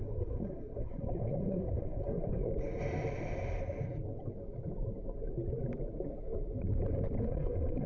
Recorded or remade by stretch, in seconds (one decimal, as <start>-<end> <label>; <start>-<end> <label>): 0.0-2.5 remade; 2.5-7.2 recorded; 7.2-7.9 remade